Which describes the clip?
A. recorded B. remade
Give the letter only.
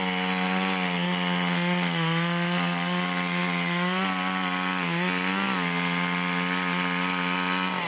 A